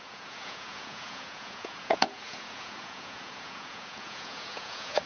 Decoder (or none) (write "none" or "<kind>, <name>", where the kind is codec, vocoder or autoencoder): vocoder, Vocos